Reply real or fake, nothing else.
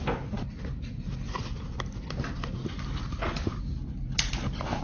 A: real